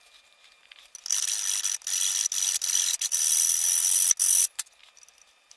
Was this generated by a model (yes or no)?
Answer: no